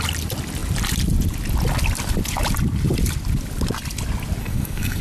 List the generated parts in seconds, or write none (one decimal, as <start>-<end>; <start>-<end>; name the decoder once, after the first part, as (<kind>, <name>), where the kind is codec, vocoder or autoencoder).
4.4-5.0 (codec, SNAC)